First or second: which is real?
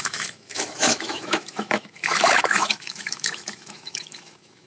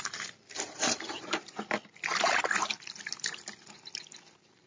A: second